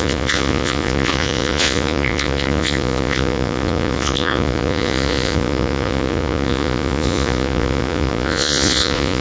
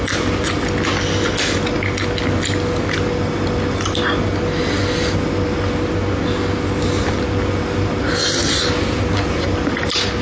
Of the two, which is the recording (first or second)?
second